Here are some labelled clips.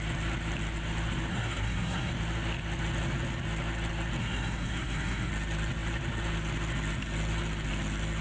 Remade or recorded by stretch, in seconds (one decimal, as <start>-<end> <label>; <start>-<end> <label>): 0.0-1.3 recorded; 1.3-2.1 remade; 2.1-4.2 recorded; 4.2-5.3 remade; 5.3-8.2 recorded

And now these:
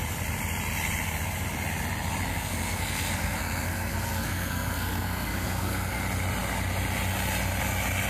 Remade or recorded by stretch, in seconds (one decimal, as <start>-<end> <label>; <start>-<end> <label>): 0.0-2.3 recorded; 2.3-6.0 remade; 6.0-8.1 recorded

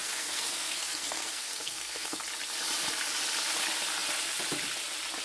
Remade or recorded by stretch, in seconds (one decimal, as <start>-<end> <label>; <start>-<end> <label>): 0.0-2.2 remade; 2.2-5.2 recorded

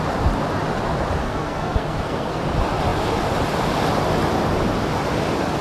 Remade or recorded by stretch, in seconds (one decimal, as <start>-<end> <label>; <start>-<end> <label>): 0.0-1.2 recorded; 1.2-2.4 remade; 2.4-5.6 recorded

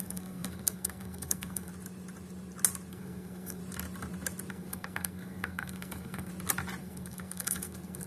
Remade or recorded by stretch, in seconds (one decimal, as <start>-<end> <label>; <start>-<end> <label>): 0.0-1.7 remade; 1.7-2.9 recorded; 2.9-3.6 remade; 3.6-4.5 recorded; 4.5-6.3 remade; 6.3-6.8 recorded; 6.8-8.1 remade